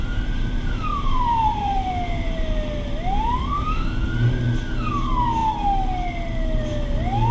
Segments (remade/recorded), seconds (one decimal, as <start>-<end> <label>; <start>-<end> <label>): 0.0-0.9 recorded; 0.9-1.9 remade; 1.9-7.3 recorded